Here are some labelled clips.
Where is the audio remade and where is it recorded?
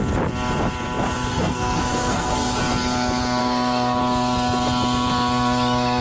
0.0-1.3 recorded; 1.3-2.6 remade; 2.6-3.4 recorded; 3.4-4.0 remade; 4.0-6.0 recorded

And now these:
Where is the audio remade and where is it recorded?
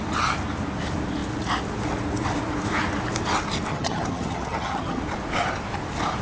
0.0-3.7 recorded; 3.7-5.0 remade; 5.0-6.2 recorded